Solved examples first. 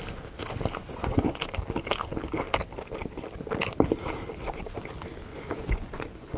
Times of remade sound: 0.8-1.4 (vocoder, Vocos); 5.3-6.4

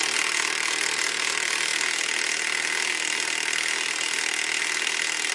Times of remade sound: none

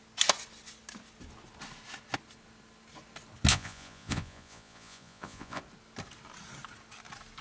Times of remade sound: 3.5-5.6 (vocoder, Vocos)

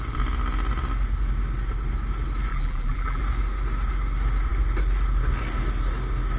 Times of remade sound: 2.5-3.2 (vocoder, BigVGAN v2)

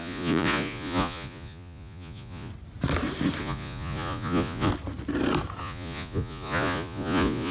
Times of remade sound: 0.0-2.5 (vocoder, Vocos); 3.4-4.7; 5.6-7.5

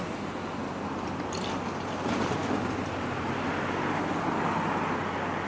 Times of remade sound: none

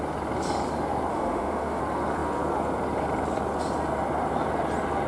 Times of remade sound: 1.1-1.8 (autoencoder, DAC-VAE)